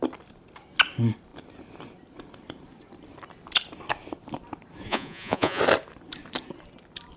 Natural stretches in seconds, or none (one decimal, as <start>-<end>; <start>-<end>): 0.0-4.9; 5.6-7.2